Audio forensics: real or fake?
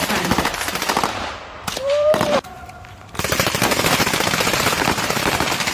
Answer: fake